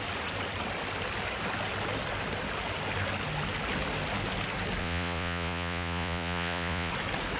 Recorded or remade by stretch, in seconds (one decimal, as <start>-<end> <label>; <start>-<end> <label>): 0.0-4.8 recorded; 4.8-6.9 remade; 6.9-7.4 recorded